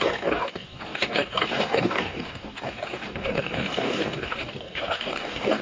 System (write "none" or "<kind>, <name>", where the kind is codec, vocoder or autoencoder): codec, DAC